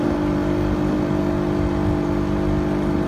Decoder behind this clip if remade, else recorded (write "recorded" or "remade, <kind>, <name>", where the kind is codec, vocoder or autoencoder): recorded